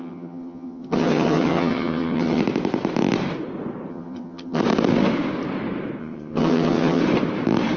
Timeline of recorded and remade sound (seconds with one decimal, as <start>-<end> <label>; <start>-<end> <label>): 0.0-2.4 remade; 2.4-3.9 recorded; 3.9-4.6 remade; 4.6-6.0 recorded; 6.0-7.0 remade; 7.0-7.8 recorded